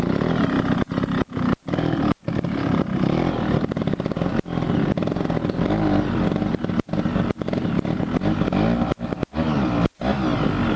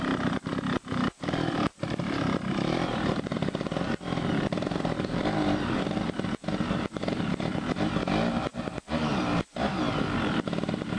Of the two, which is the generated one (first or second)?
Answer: second